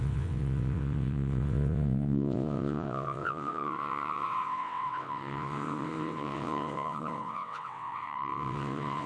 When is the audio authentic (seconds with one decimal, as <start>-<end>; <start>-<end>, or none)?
none